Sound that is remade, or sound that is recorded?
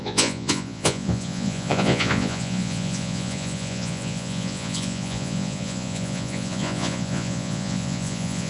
remade